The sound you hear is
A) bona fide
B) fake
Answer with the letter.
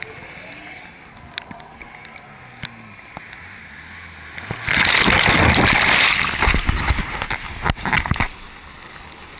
A